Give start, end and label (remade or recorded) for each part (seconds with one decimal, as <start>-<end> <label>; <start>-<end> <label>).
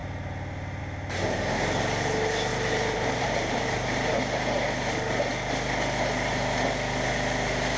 0.0-2.5 recorded; 2.5-4.2 remade; 4.2-7.8 recorded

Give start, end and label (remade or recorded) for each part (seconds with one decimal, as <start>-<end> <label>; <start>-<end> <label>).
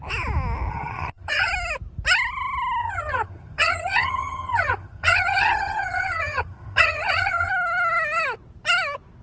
0.0-0.7 recorded; 0.7-1.5 remade; 1.5-2.8 recorded; 2.8-7.5 remade; 7.5-9.2 recorded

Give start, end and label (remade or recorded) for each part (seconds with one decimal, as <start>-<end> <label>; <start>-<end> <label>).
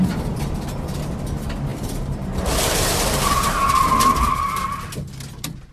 0.0-1.7 recorded; 1.7-3.7 remade; 3.7-5.7 recorded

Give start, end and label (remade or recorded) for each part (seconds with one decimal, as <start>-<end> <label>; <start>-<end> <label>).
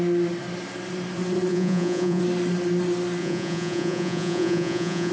0.0-1.5 recorded; 1.5-2.2 remade; 2.2-3.2 recorded; 3.2-5.1 remade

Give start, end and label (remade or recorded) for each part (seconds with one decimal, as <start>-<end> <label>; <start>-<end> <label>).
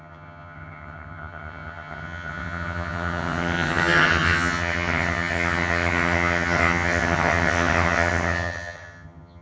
0.0-9.4 remade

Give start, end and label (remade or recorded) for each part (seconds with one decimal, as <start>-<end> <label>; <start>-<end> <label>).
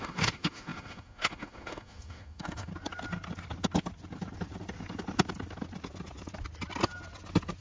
0.0-2.7 remade; 2.7-7.6 recorded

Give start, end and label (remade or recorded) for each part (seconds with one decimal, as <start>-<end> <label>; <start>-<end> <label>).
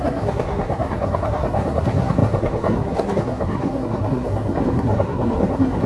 0.0-5.9 remade